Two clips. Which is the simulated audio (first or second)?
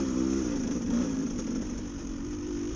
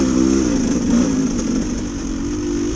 first